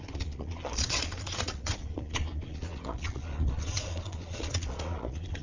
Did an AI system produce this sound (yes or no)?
yes